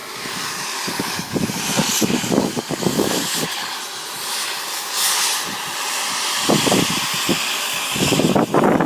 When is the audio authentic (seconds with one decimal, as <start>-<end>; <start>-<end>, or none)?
3.8-4.4; 5.2-7.3; 8.2-8.9